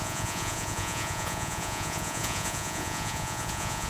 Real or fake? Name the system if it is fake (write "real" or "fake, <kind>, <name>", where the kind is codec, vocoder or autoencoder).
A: fake, vocoder, Vocos